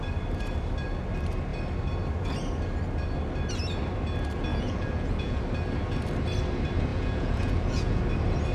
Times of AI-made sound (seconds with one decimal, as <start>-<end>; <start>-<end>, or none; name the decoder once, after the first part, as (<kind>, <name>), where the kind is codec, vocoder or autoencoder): 4.5-5.4 (vocoder, Vocos); 6.9-8.0